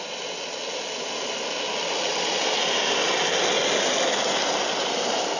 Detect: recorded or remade recorded